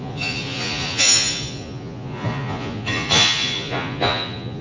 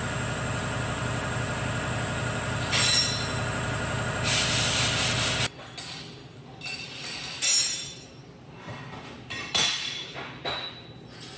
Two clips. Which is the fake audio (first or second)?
first